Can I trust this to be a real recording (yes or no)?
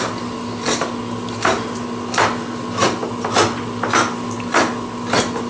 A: yes